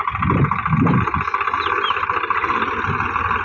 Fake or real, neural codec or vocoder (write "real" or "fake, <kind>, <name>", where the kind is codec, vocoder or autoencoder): real